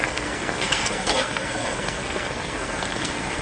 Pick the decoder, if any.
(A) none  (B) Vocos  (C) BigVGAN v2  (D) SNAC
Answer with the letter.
D